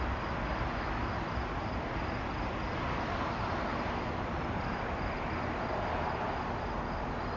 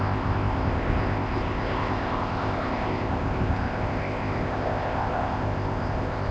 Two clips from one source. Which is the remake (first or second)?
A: second